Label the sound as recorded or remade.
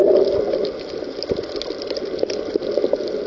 recorded